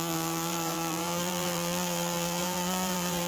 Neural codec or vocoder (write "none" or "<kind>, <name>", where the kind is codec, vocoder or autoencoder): vocoder, BigVGAN v2